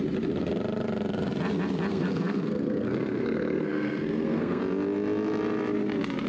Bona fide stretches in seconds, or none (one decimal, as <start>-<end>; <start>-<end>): 0.0-1.9; 4.6-6.3

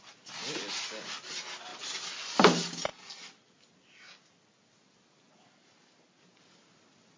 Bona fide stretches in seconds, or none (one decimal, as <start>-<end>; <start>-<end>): 0.0-7.2

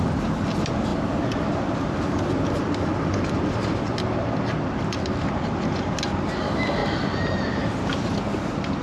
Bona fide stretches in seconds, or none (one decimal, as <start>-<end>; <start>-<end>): 0.0-0.9; 5.6-6.8; 7.4-7.9

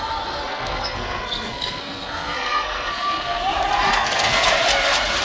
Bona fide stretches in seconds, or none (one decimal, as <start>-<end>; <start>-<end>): 0.0-0.5; 3.4-3.9; 4.5-5.2

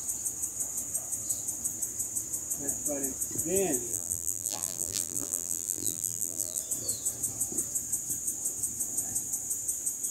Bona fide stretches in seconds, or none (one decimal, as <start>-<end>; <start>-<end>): 0.0-3.9; 6.6-10.1